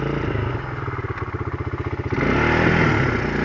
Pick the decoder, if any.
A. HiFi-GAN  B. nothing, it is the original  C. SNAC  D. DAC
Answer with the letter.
B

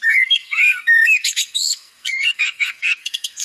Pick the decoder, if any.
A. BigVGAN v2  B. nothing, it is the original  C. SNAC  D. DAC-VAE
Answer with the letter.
C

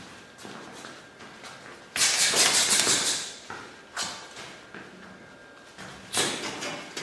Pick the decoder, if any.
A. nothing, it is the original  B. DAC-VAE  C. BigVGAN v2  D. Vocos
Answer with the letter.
A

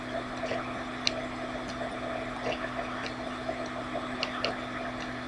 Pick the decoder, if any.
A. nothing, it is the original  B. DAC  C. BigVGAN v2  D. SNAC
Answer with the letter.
A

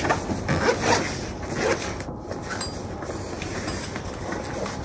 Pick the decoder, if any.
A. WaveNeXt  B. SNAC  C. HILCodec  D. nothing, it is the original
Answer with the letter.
D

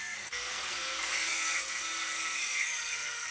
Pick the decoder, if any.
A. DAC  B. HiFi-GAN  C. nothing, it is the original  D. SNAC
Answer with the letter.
D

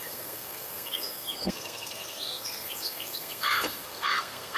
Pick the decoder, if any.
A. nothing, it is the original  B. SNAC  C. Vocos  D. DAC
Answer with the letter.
B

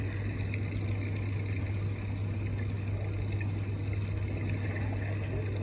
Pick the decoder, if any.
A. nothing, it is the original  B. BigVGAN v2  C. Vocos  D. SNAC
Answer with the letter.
A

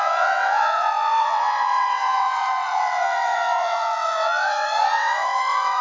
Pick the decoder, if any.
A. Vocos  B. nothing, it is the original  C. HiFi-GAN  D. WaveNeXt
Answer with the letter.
D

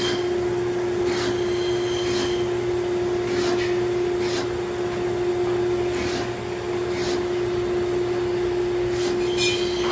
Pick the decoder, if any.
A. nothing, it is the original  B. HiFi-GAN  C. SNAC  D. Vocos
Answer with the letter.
A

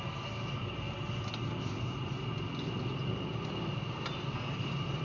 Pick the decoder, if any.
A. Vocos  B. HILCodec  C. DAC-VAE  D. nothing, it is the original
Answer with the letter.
D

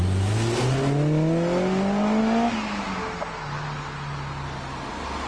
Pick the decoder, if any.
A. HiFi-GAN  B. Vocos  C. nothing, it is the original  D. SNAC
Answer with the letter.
C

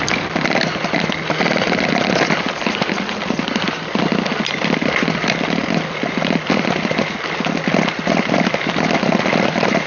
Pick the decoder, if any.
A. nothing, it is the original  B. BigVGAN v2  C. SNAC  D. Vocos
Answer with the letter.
A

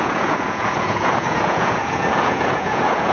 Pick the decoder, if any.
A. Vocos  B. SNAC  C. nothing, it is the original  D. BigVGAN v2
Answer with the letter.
A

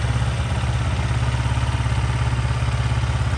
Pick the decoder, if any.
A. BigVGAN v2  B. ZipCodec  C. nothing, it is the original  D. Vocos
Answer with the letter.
C